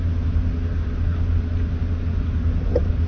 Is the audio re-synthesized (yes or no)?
no